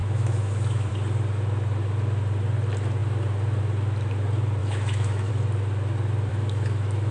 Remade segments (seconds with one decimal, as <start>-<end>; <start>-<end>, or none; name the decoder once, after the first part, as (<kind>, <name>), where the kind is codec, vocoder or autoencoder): 0.0-0.9 (autoencoder, DAC-VAE); 4.6-5.3; 6.3-7.1